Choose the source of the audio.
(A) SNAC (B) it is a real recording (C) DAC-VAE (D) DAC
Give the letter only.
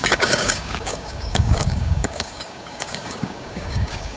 D